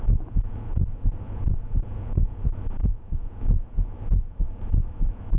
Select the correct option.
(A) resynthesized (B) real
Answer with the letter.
A